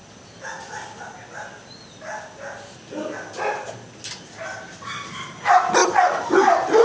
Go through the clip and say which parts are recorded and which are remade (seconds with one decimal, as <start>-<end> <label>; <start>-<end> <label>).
0.0-6.8 recorded